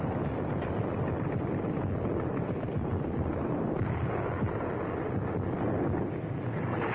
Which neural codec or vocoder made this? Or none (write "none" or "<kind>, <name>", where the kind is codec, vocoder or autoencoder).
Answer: none